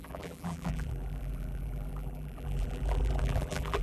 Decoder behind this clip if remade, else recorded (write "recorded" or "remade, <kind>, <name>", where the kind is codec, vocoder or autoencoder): remade, vocoder, BigVGAN v2